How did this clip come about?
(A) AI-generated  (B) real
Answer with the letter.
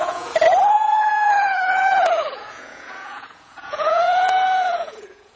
A